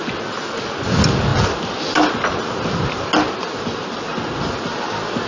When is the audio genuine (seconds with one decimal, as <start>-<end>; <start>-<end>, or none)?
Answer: 0.0-5.3

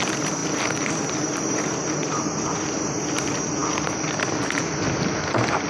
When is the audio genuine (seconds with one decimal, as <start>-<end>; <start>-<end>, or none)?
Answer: 0.0-5.7

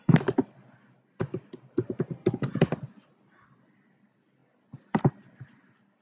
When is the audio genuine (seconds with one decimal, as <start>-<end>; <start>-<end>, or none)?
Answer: 0.0-6.0

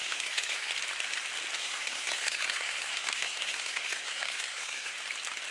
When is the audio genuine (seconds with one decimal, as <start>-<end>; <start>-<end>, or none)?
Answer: 0.7-1.6; 4.9-5.5